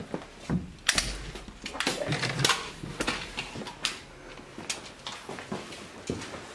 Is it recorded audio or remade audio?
recorded